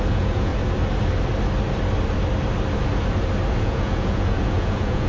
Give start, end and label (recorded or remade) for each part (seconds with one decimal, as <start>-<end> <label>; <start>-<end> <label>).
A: 0.0-0.5 remade; 0.5-3.6 recorded; 3.6-5.1 remade